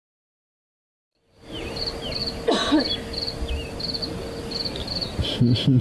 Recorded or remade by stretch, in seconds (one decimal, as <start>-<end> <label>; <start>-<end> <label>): 0.0-5.8 recorded

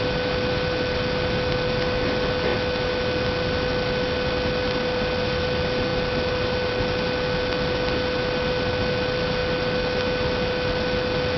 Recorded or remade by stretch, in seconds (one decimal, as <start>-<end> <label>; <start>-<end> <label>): 0.0-11.4 recorded